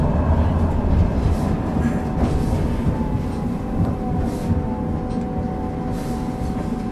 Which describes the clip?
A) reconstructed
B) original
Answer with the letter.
B